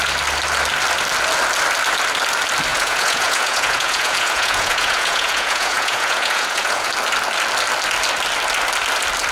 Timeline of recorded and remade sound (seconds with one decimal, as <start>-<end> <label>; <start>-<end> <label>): 0.0-2.7 recorded; 2.7-6.9 remade; 6.9-9.3 recorded